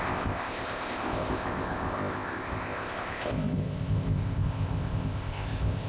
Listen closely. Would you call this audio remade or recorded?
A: remade